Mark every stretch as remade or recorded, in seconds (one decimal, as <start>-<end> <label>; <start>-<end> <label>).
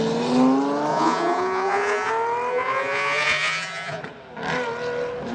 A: 0.0-0.9 recorded; 0.9-2.1 remade; 2.1-2.5 recorded; 2.5-4.0 remade; 4.0-5.3 recorded